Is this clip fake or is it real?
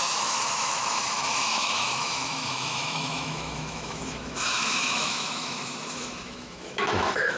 fake